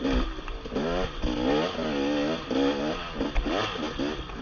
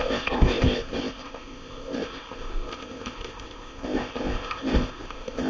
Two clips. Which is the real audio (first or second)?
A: first